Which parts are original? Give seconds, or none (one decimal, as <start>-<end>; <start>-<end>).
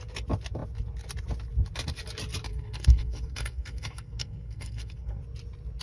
0.0-2.5; 5.2-5.8